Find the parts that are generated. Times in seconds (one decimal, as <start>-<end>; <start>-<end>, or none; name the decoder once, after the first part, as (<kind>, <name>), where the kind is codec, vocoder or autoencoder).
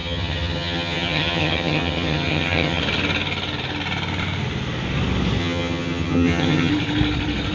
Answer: 0.0-2.8 (vocoder, HiFi-GAN); 5.4-6.7